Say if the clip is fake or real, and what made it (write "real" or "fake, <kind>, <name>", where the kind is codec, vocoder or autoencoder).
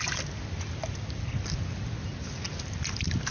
real